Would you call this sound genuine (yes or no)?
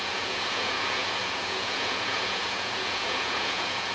no